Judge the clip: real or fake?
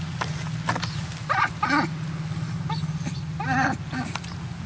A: real